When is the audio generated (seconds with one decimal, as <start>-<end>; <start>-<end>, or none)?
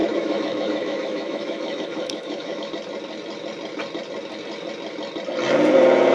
0.0-2.7